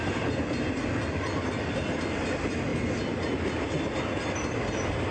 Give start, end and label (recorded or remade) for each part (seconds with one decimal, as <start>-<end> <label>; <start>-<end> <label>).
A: 0.0-5.1 recorded